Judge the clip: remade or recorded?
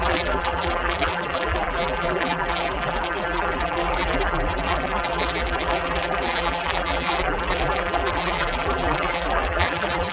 remade